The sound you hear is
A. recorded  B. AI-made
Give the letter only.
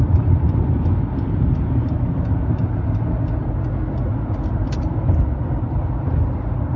A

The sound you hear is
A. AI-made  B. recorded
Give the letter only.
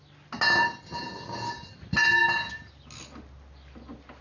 B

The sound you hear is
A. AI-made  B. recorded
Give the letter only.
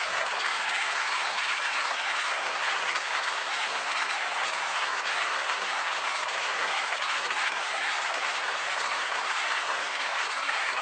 A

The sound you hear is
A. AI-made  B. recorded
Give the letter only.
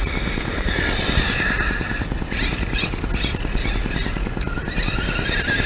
B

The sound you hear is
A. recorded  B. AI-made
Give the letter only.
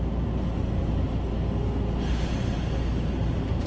A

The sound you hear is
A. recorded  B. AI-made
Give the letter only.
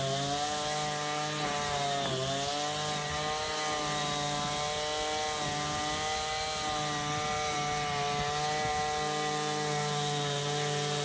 A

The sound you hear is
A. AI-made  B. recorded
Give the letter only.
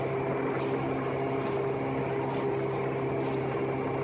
B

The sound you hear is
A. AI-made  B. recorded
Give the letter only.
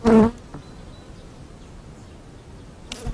B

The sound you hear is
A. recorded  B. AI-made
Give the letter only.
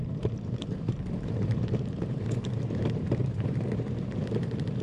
B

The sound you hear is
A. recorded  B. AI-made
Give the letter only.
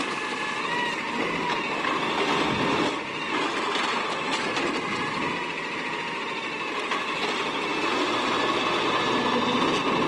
A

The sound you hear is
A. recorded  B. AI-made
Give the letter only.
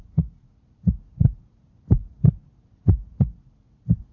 B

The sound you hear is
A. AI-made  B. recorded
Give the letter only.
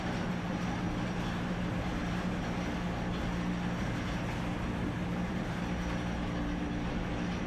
B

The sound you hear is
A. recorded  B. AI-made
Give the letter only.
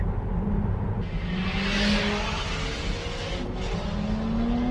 A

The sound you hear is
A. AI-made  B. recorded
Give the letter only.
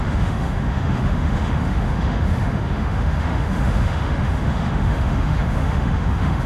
A